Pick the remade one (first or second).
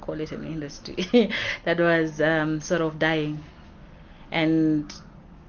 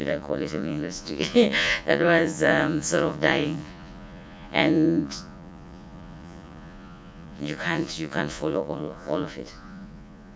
second